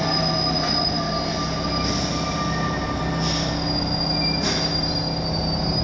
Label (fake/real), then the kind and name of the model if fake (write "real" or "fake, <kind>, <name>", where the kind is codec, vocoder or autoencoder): real